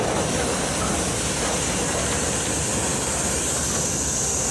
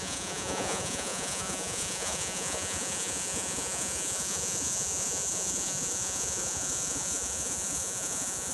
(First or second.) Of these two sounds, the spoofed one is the second